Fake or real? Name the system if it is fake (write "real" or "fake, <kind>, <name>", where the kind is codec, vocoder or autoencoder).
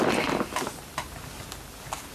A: real